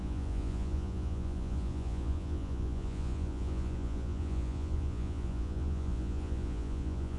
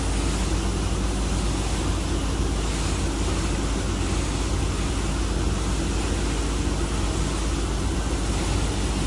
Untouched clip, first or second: second